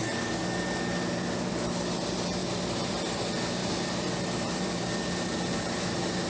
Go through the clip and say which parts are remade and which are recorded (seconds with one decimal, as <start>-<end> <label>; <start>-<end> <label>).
0.0-2.4 recorded; 2.4-3.0 remade; 3.0-3.6 recorded; 3.6-5.8 remade; 5.8-6.3 recorded